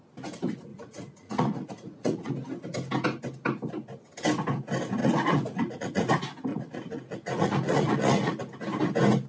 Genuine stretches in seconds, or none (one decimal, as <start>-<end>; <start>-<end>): 0.0-0.7; 2.3-5.0; 6.1-6.5; 8.4-9.3